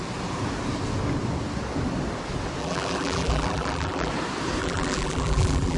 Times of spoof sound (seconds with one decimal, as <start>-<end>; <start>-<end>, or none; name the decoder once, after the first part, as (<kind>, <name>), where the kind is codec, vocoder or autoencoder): 2.6-4.1 (vocoder, BigVGAN v2); 4.6-5.8